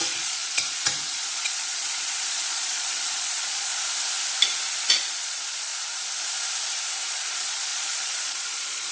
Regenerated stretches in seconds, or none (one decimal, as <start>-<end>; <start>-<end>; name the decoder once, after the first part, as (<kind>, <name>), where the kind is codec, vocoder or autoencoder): 0.0-3.7 (vocoder, Vocos); 4.9-5.7; 7.1-8.9